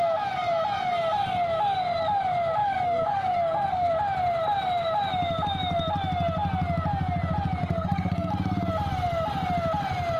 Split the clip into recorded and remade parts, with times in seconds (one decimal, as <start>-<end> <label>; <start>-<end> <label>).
0.0-2.6 recorded; 2.6-3.9 remade; 3.9-7.6 recorded; 7.6-8.3 remade; 8.3-10.2 recorded